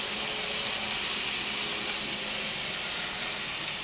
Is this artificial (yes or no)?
no